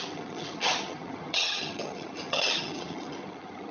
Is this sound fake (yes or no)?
yes